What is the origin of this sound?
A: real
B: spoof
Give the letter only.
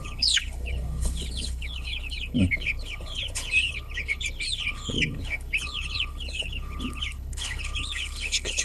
B